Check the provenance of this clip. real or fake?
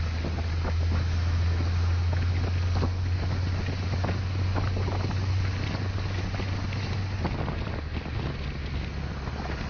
real